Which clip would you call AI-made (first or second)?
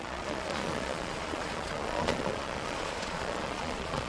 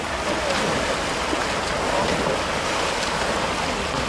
first